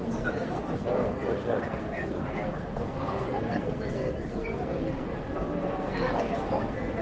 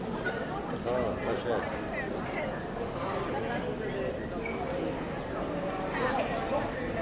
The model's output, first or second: first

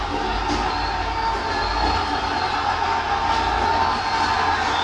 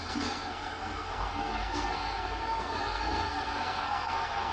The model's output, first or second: second